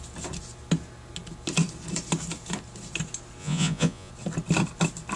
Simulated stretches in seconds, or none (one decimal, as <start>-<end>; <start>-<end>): 3.4-4.1